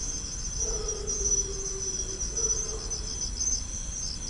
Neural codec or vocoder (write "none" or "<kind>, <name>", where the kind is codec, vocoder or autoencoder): none